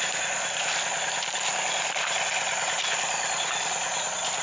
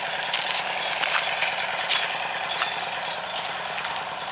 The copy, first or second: first